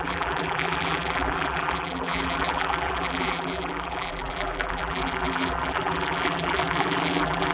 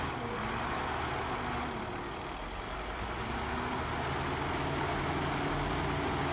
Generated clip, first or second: first